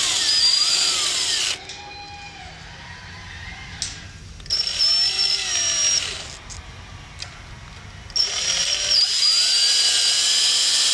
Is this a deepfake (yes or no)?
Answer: no